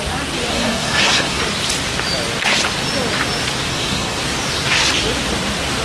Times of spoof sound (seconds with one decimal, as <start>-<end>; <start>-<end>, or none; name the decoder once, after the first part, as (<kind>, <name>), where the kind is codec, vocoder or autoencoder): 0.5-1.4 (codec, SNAC); 3.7-4.2